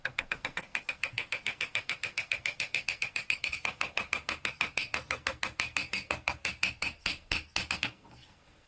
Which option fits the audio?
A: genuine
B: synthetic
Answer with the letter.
B